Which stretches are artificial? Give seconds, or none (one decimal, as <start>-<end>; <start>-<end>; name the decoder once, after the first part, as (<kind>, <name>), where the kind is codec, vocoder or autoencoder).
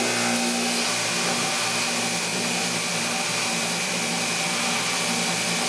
2.3-4.2 (vocoder, BigVGAN v2)